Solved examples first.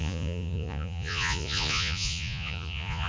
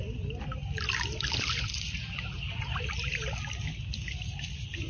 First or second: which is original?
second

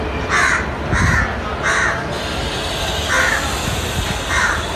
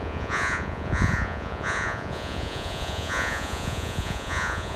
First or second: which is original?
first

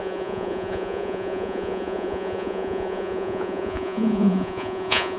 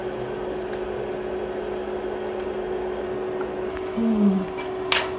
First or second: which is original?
second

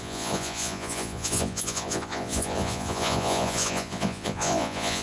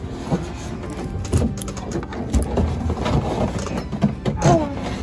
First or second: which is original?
second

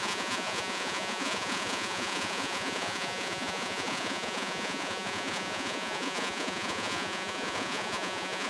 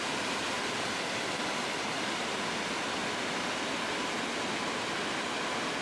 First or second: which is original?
second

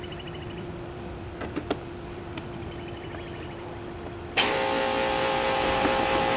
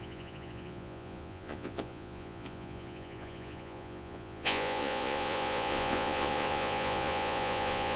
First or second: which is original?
first